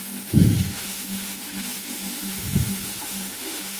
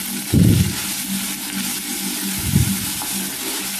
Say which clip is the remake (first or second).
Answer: first